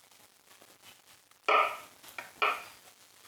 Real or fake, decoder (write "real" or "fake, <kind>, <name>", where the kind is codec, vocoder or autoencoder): real